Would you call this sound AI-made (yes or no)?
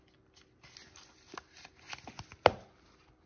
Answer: no